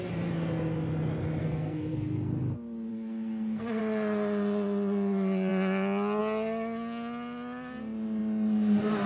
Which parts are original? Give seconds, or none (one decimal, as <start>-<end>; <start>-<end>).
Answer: 0.0-1.4; 2.4-2.9; 3.8-9.1